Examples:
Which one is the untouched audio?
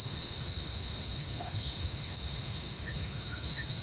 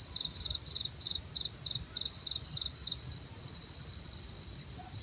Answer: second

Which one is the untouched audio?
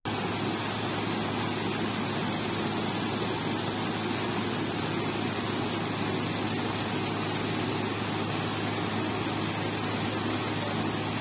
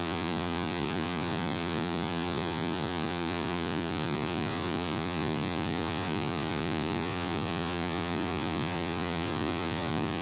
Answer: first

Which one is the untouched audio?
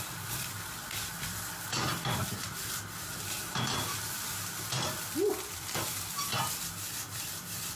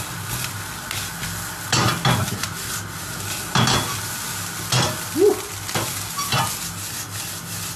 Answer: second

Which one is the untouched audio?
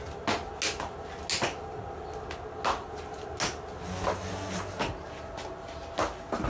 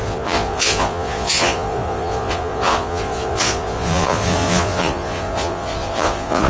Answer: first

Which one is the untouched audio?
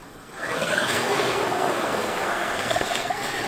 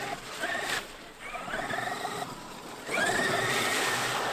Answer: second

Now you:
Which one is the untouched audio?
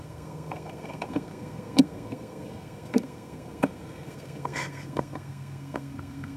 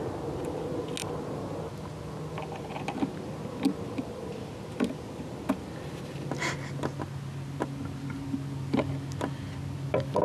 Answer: second